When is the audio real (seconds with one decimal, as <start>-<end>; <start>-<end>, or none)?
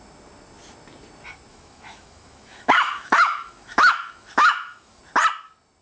0.0-1.5; 5.0-5.8